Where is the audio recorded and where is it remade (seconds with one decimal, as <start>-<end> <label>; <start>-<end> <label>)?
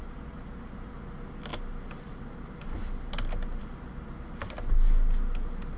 0.0-5.8 recorded